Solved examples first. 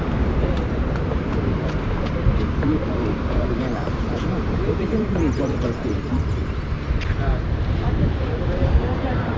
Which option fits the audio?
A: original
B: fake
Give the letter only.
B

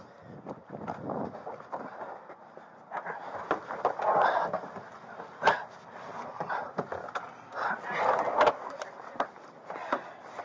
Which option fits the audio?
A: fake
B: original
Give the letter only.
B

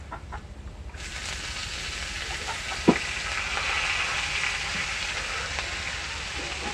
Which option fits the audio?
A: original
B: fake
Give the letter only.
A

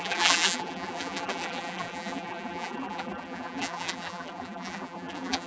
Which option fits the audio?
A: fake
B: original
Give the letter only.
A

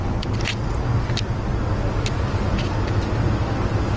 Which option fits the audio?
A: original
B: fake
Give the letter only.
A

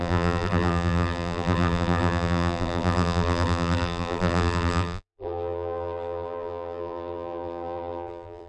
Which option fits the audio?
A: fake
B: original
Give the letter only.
A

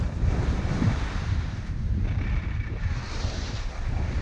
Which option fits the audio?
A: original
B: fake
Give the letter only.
B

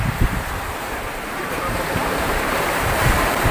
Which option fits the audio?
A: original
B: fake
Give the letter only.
B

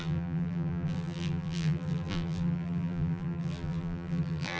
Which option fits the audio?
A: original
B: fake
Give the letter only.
B